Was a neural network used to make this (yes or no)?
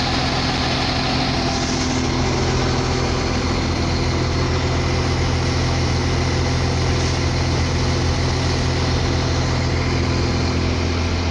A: no